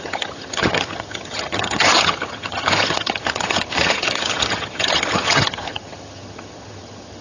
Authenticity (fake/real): fake